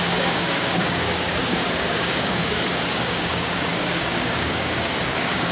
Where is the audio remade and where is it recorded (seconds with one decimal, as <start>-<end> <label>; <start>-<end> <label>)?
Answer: 0.0-5.5 remade